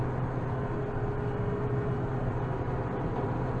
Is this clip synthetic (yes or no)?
no